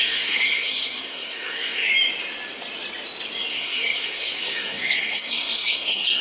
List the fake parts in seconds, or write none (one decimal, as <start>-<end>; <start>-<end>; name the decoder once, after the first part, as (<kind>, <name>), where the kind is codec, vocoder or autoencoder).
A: 0.0-1.9 (codec, SNAC); 3.5-6.2